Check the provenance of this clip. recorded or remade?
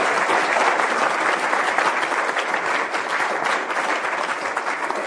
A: recorded